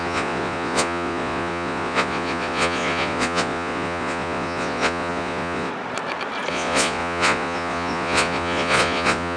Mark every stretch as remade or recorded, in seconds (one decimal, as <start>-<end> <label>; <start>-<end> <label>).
0.0-5.7 remade; 5.7-6.5 recorded; 6.5-9.4 remade